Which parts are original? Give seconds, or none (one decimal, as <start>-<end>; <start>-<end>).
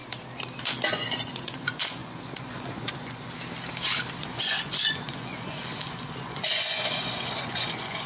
0.0-0.9; 3.4-4.2